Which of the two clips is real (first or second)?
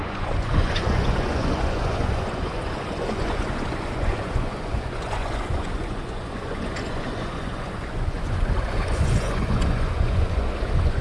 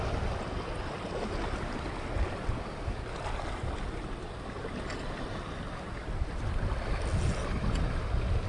second